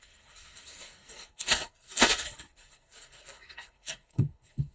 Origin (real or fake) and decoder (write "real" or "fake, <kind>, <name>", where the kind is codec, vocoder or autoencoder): fake, codec, SNAC